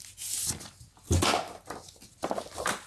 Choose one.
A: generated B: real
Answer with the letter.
B